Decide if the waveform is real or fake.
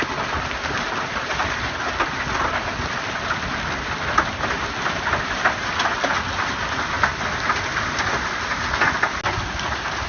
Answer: real